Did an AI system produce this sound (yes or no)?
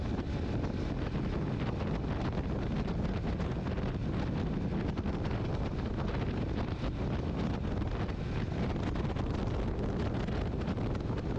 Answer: no